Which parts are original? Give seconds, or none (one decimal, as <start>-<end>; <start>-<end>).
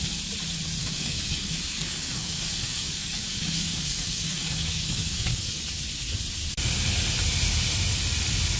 0.0-0.8; 5.7-8.6